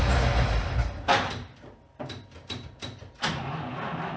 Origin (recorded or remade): recorded